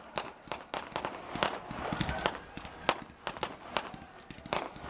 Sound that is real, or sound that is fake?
real